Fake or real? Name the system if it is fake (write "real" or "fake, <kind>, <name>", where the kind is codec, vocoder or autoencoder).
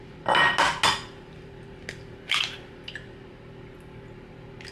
real